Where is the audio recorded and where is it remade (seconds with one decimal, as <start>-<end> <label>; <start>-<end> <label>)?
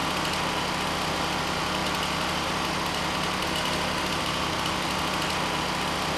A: 0.0-6.2 recorded